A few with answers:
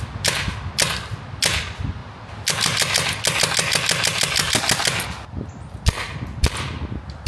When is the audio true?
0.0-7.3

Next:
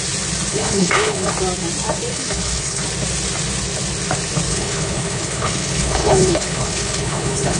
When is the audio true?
0.0-0.5; 1.3-2.1; 2.8-4.5

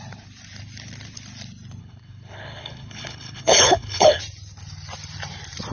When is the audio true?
0.0-1.8; 4.2-5.7